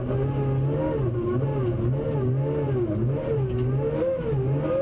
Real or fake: real